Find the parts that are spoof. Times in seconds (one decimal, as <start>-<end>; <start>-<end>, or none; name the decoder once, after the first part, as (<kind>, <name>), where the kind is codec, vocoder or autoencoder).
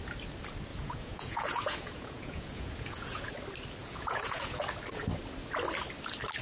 0.7-3.3 (vocoder, Vocos); 3.8-4.6